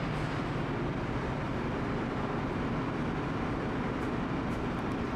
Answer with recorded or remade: remade